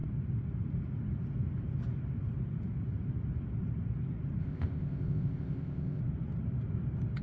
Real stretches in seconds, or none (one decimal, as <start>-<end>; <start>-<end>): 0.0-4.4; 6.0-7.2